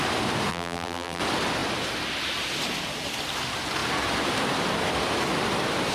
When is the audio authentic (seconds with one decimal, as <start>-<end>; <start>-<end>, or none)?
0.0-0.5; 1.2-5.9